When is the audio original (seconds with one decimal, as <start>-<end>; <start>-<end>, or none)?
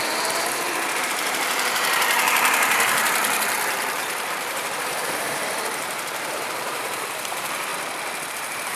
7.7-8.3